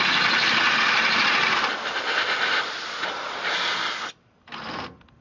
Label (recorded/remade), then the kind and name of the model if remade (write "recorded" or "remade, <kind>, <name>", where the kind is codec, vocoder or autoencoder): recorded